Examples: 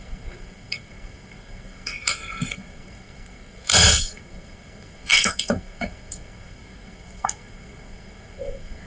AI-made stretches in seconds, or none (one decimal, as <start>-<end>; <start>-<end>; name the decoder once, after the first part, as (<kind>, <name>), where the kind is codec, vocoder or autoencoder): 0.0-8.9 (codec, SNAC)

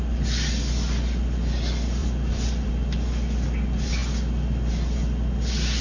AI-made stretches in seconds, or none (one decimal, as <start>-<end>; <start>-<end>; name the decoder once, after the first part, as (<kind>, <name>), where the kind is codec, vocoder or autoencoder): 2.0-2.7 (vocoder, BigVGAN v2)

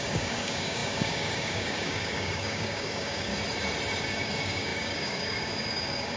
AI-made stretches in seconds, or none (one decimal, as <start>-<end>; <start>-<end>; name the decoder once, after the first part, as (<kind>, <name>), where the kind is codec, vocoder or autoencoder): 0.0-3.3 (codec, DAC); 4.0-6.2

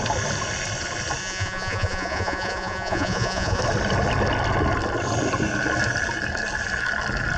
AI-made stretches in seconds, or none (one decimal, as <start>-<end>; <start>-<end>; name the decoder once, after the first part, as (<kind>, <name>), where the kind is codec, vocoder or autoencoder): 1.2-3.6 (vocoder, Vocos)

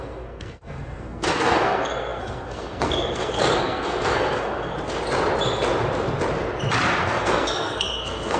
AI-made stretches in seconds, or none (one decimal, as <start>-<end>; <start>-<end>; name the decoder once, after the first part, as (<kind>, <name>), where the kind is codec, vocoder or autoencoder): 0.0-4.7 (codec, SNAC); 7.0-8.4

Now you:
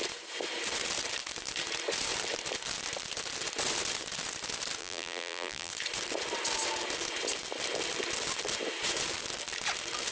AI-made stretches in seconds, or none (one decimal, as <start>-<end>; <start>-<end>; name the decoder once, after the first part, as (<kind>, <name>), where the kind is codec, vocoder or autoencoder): 4.8-5.7 (vocoder, BigVGAN v2)

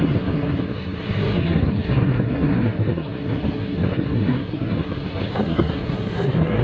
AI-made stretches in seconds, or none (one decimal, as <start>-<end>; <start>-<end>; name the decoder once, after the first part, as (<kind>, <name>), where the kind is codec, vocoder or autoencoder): 0.0-6.6 (codec, SNAC)